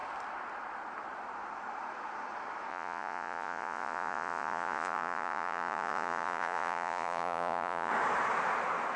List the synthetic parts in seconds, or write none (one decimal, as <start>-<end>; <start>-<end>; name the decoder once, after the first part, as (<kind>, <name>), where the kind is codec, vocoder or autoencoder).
2.7-7.9 (vocoder, Vocos)